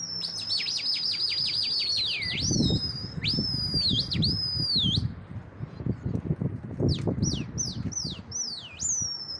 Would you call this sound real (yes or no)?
yes